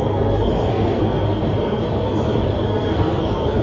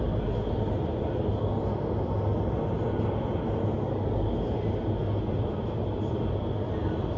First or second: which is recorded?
second